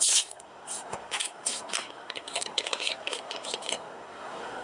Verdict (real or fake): fake